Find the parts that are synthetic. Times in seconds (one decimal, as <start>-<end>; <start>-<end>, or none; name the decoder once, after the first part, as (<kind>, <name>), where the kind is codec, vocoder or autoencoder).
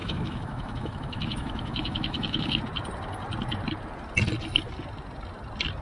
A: 0.0-2.6 (autoencoder, DAC-VAE)